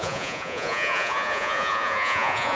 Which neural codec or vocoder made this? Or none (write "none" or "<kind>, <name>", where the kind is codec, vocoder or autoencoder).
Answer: vocoder, Vocos